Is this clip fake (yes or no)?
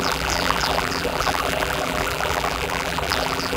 yes